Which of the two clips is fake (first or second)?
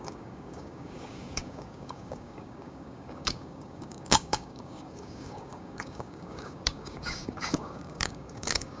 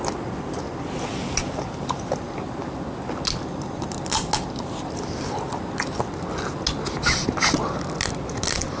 first